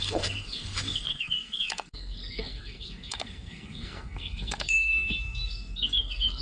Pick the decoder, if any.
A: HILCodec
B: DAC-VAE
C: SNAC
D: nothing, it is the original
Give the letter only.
C